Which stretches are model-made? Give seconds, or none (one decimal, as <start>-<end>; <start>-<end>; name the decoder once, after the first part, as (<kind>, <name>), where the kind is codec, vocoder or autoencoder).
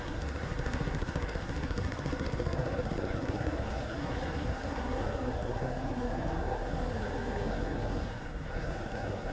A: 0.0-9.3 (codec, SNAC)